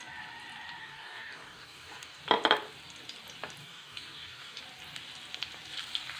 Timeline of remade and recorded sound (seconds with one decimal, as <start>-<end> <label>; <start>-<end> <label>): 0.0-0.8 recorded; 0.8-2.2 remade; 2.2-3.6 recorded; 3.6-4.6 remade; 4.6-6.2 recorded